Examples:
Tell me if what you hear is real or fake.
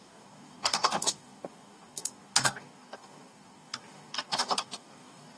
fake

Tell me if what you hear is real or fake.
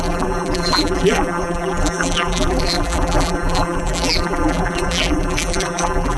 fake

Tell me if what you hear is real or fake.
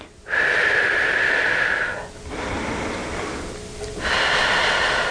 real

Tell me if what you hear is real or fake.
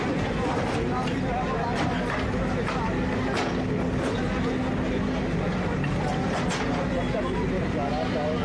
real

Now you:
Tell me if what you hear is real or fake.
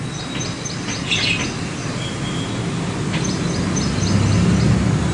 real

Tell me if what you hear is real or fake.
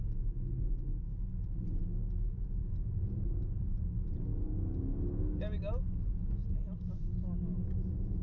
real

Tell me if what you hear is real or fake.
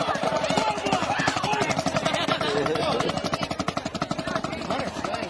real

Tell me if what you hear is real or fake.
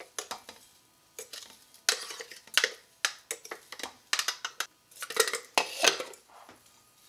real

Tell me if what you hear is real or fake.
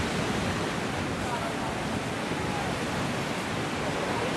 real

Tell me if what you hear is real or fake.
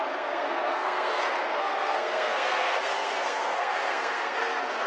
fake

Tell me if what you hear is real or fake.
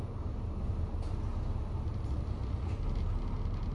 real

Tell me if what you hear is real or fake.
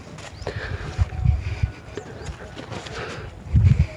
real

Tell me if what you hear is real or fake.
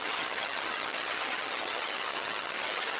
fake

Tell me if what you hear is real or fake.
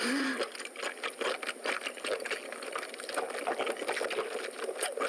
real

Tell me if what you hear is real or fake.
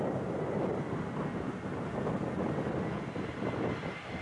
real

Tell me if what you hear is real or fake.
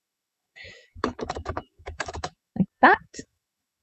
fake